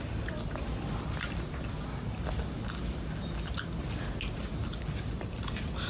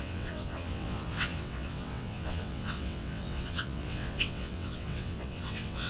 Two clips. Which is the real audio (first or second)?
first